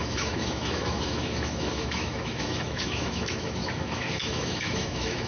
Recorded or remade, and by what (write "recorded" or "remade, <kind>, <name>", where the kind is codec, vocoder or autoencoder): remade, autoencoder, DAC-VAE